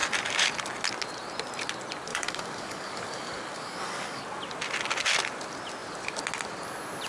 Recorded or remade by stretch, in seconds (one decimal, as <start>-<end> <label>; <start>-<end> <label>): 0.0-2.1 recorded; 2.1-4.2 remade; 4.2-7.1 recorded